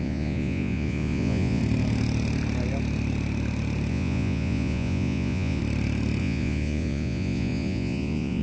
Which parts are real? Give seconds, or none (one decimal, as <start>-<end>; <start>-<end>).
1.6-3.9; 5.6-6.2

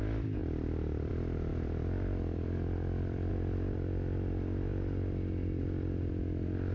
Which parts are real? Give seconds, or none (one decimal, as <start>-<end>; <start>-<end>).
0.0-0.4; 1.1-1.5; 3.3-6.7

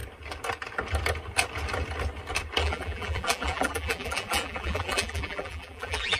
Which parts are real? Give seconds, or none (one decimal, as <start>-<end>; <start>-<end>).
0.0-2.6

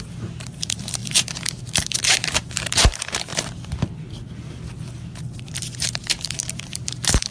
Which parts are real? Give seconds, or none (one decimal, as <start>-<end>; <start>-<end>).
3.3-5.8

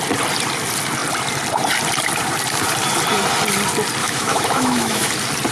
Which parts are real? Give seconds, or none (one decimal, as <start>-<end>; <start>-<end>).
0.0-4.0; 5.1-5.5